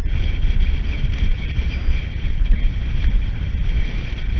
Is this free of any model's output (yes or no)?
no